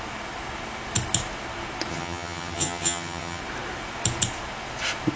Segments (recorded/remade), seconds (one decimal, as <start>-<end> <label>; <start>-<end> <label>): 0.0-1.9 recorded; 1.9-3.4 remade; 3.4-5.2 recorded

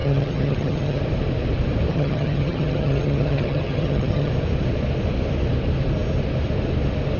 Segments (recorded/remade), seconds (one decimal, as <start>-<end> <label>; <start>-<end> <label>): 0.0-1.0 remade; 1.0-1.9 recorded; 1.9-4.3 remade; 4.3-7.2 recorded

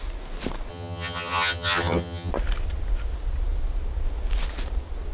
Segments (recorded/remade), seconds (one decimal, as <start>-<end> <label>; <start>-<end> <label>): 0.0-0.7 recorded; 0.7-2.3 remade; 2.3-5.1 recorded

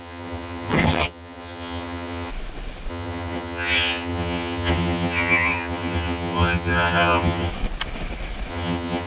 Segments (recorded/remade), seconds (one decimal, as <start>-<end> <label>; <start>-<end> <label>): 0.0-2.3 remade; 2.3-2.9 recorded; 2.9-7.5 remade; 7.5-8.5 recorded; 8.5-9.1 remade

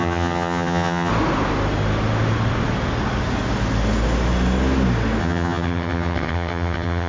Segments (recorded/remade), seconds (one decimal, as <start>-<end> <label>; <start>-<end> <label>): 0.0-1.1 remade; 1.1-5.2 recorded; 5.2-7.1 remade

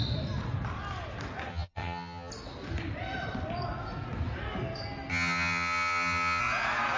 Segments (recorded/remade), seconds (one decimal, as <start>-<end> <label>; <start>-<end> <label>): 0.0-1.5 recorded; 1.5-2.3 remade; 2.3-5.1 recorded; 5.1-6.4 remade; 6.4-7.0 recorded

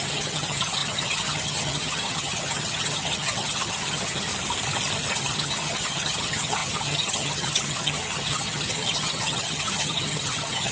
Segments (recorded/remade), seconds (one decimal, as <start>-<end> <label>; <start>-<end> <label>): 0.0-4.3 remade; 4.3-5.1 recorded; 5.1-10.7 remade